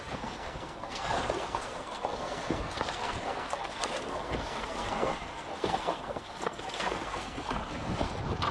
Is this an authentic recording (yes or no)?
no